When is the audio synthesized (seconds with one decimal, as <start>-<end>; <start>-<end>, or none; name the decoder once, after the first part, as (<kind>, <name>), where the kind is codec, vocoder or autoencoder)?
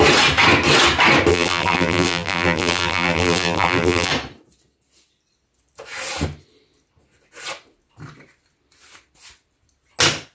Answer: 1.3-4.1 (vocoder, BigVGAN v2)